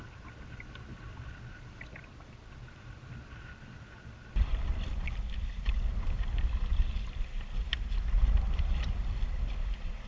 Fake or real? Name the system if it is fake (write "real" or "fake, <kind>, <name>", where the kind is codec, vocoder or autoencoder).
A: fake, vocoder, BigVGAN v2